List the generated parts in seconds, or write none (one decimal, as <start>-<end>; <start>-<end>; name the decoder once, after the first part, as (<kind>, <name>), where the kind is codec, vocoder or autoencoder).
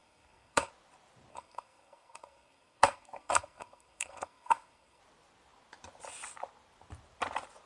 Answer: 0.0-0.7 (codec, SNAC); 1.3-5.0